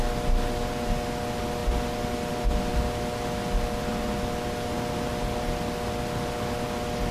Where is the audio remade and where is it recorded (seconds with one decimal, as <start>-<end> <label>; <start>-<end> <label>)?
0.0-7.1 recorded